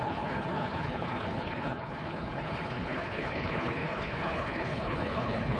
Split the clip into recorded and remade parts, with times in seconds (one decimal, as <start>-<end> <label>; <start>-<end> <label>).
0.0-5.6 remade